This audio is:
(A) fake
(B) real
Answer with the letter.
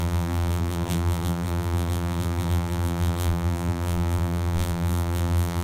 A